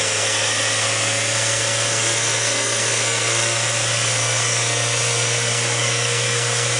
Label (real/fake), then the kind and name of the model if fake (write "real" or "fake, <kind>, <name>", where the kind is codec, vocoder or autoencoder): fake, codec, SNAC